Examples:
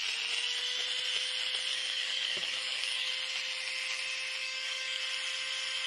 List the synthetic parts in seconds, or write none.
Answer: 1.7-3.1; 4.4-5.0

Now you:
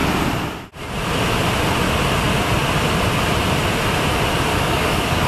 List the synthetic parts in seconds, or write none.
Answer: 4.5-5.3